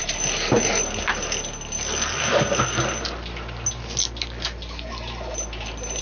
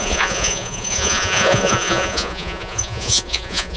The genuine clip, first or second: first